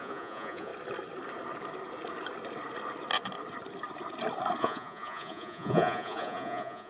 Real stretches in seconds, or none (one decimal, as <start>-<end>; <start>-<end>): 0.7-4.6